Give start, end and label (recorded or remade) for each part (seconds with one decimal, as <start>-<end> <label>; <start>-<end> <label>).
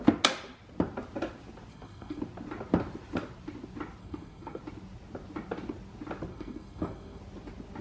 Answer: 0.0-1.7 recorded; 1.7-2.2 remade; 2.2-4.0 recorded; 4.0-4.6 remade; 4.6-6.3 recorded; 6.3-7.2 remade; 7.2-7.8 recorded